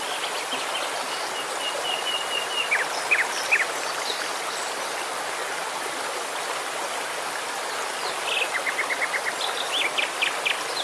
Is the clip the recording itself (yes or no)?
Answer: yes